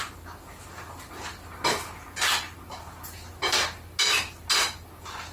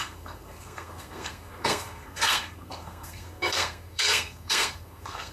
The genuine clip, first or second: first